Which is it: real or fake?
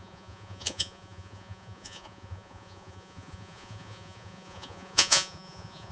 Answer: fake